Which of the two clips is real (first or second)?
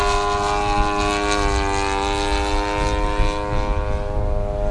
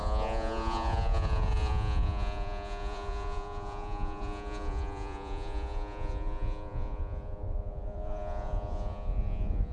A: first